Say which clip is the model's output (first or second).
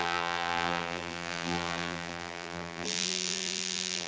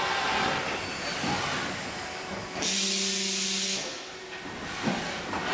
first